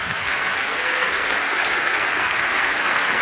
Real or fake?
fake